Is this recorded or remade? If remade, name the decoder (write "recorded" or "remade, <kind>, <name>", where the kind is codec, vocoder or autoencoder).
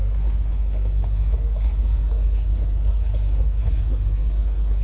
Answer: remade, codec, SNAC